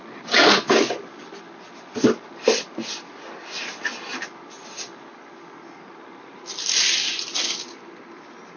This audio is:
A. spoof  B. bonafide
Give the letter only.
B